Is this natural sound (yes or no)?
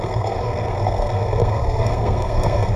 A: no